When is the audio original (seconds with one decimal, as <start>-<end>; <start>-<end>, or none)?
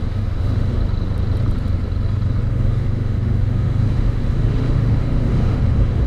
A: 0.8-2.5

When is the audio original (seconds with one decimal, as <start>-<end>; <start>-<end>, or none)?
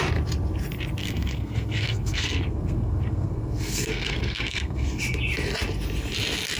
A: 0.0-1.0; 5.0-6.6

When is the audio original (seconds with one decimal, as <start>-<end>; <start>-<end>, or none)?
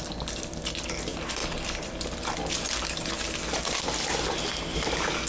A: 0.0-5.3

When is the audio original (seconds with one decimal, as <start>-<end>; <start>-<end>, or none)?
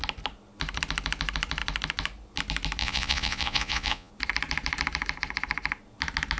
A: 0.0-2.8; 4.1-6.4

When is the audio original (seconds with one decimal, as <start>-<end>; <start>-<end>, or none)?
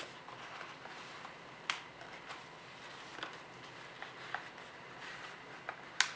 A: 0.0-6.2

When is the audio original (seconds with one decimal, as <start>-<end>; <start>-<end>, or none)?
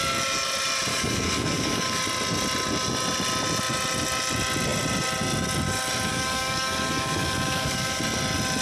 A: 0.0-0.9; 2.0-6.1; 8.0-8.6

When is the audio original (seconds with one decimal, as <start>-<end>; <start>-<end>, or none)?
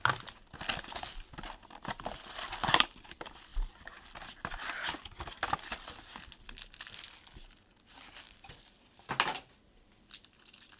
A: 0.0-10.8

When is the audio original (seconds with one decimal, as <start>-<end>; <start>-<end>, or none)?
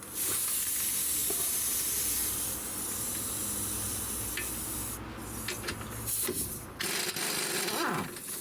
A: 0.0-8.4